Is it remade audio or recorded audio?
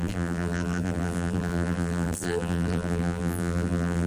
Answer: remade